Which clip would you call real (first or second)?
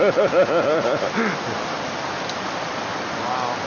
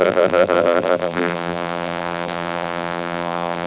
first